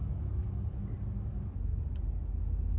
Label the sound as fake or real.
real